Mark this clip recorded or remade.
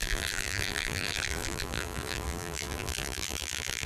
remade